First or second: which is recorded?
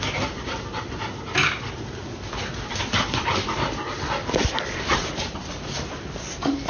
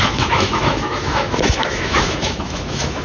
first